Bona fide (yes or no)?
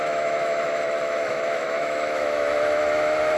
no